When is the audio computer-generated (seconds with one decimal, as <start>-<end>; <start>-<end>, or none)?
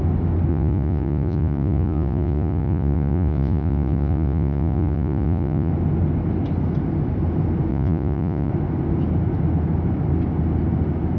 0.5-5.7; 7.7-8.5